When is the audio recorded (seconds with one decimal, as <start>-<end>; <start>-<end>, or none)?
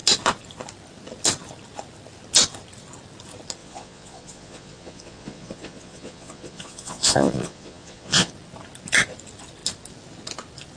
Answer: 0.0-3.6; 8.3-10.8